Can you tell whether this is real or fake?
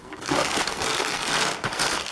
fake